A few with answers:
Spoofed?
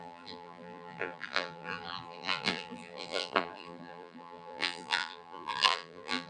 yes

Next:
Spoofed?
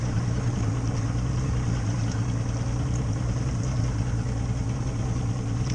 no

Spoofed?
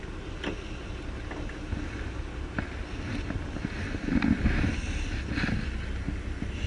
no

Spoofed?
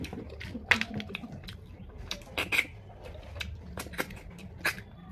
no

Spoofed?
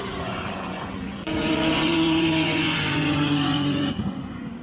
yes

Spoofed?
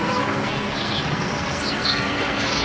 yes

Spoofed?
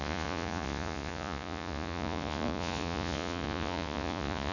yes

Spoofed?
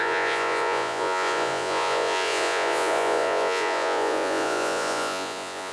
yes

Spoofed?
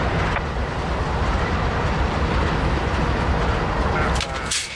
no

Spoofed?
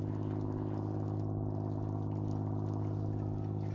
no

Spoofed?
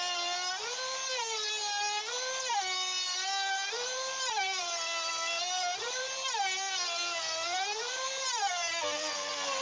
no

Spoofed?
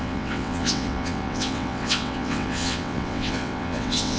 yes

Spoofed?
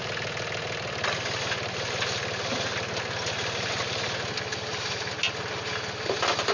no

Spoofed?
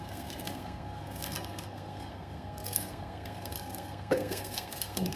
yes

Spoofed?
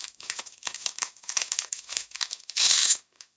yes